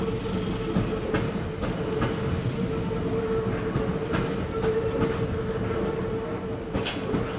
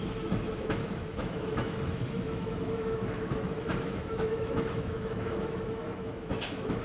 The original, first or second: first